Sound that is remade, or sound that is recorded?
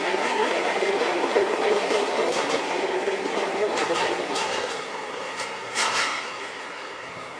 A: remade